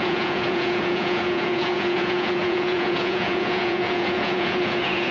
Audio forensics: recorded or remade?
remade